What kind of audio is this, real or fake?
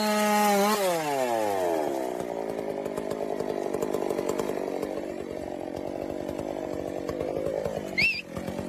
real